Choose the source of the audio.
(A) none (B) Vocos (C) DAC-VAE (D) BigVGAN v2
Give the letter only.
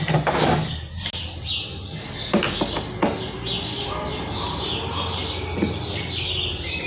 A